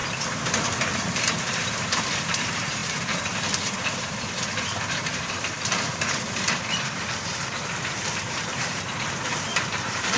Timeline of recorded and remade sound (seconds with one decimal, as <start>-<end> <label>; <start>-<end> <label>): 0.0-0.6 recorded; 0.6-10.2 remade